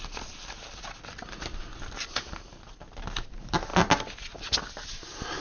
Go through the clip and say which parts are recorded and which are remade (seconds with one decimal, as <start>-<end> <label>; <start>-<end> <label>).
0.0-5.4 recorded